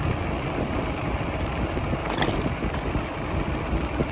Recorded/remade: remade